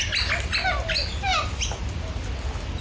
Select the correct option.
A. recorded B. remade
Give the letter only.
A